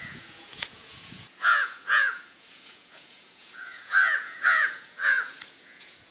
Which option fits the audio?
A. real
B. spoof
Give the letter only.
B